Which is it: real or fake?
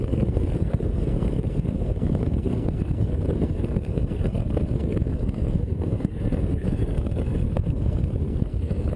fake